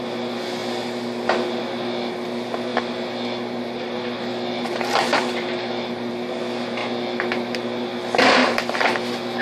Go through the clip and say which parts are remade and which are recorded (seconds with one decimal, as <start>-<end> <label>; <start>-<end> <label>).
0.0-2.7 recorded; 2.7-6.1 remade; 6.1-8.4 recorded; 8.4-9.0 remade; 9.0-9.4 recorded